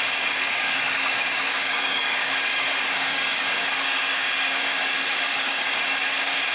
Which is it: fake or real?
fake